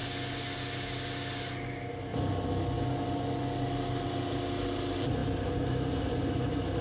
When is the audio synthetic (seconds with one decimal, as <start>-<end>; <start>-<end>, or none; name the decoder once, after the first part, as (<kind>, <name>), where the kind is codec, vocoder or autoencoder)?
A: none